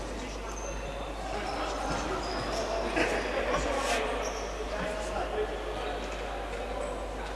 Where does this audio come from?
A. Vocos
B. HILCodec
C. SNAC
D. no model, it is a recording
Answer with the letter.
D